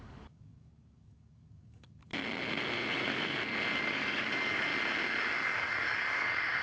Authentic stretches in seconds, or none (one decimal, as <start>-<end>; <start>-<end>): 2.1-3.8; 4.7-5.2